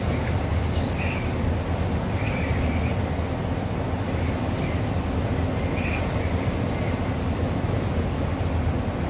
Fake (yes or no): no